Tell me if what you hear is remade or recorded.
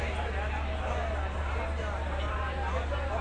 recorded